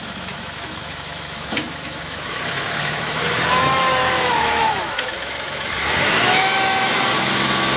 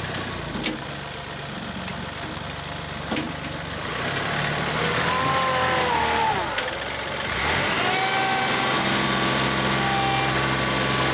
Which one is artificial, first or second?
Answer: first